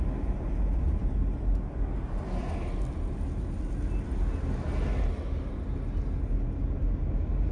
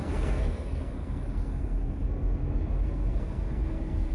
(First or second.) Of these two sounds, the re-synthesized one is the second